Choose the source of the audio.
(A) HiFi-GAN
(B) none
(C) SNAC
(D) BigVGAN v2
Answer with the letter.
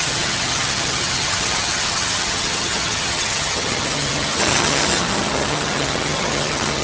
A